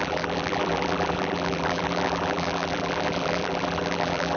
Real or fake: fake